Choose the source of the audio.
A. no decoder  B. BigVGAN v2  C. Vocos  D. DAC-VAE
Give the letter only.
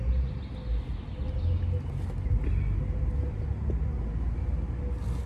A